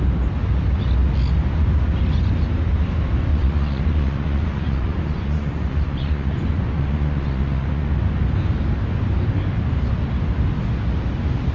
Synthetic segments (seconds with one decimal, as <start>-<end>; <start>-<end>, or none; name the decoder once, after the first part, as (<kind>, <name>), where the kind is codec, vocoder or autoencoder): 3.3-7.9 (vocoder, Vocos)